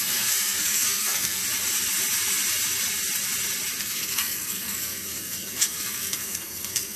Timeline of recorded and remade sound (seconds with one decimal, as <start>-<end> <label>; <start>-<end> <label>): 0.0-1.4 remade; 1.4-3.8 recorded; 3.8-7.0 remade